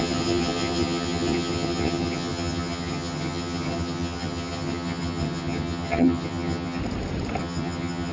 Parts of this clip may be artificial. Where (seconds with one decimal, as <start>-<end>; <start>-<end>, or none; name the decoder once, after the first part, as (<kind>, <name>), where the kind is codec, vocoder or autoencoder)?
0.0-6.8 (vocoder, HiFi-GAN); 7.4-8.1